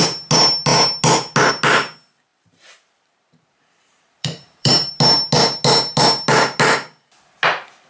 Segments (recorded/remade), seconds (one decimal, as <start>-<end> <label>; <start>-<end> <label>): 0.0-2.3 recorded; 2.3-4.9 remade; 4.9-7.9 recorded